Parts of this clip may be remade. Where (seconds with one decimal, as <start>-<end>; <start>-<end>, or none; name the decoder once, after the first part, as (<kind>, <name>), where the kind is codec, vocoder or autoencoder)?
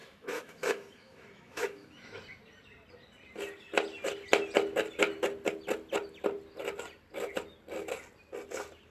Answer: 0.0-2.2 (autoencoder, DAC-VAE)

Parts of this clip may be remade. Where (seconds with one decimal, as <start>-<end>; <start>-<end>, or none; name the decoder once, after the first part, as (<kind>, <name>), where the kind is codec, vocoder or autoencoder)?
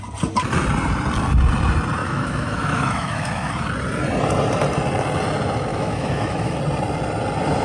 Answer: 2.0-3.5 (autoencoder, DAC-VAE); 5.7-6.6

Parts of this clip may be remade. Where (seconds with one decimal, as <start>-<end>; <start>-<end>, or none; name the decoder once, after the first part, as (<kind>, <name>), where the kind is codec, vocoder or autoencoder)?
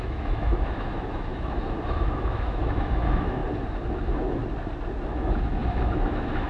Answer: 0.0-3.4 (autoencoder, DAC-VAE); 4.0-4.4; 5.1-6.5